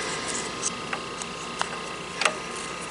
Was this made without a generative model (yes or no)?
yes